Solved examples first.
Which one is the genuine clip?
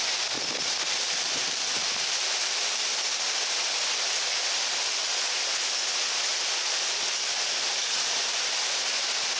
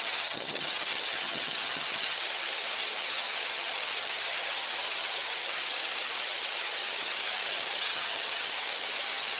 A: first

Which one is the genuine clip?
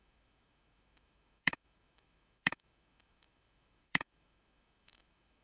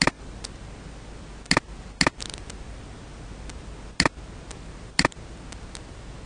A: second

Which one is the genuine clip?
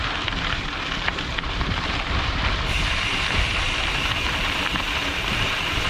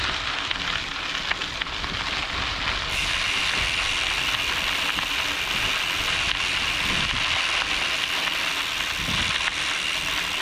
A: second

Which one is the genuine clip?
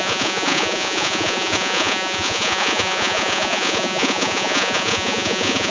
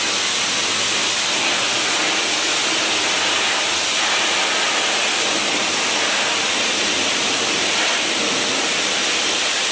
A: second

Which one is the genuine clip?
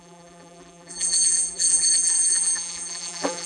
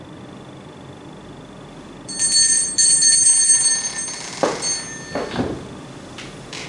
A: second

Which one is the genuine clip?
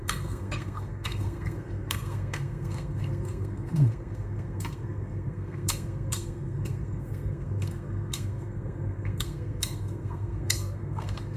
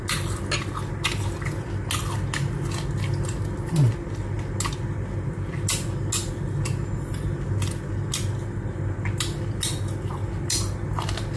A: second